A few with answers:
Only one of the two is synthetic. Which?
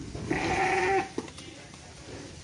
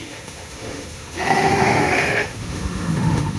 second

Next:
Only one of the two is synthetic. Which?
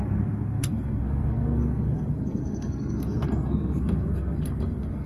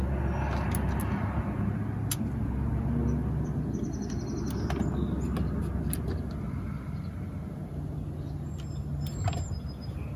first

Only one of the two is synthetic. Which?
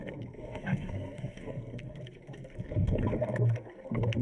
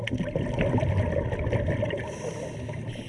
first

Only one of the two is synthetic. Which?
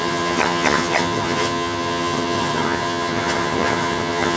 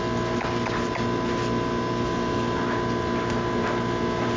first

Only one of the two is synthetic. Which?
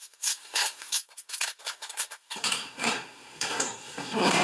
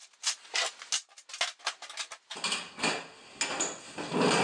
first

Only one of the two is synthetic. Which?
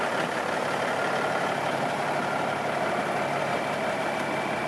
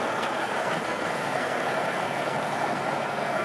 second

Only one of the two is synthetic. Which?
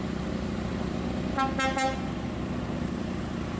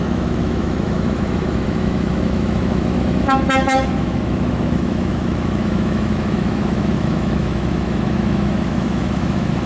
second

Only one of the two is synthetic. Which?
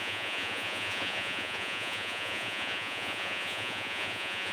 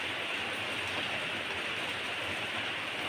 first